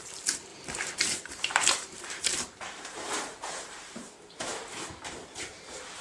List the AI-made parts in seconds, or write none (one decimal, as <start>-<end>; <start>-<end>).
0.5-4.1